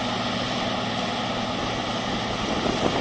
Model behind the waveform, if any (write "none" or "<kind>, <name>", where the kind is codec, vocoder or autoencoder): none